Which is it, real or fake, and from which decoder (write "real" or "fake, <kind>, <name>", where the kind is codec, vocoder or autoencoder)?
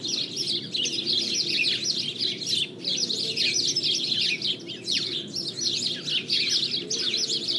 real